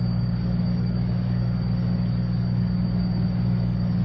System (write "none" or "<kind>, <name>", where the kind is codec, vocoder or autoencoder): codec, DAC